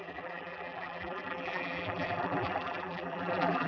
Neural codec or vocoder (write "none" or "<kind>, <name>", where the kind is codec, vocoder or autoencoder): vocoder, BigVGAN v2